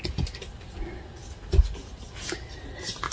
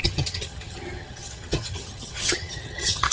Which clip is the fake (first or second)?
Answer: second